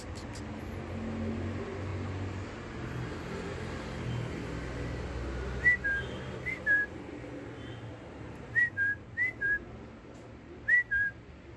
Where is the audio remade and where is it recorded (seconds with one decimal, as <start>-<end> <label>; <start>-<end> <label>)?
0.0-11.6 recorded